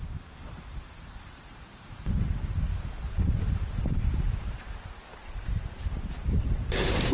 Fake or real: fake